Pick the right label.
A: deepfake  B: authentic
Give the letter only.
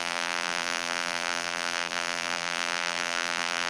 A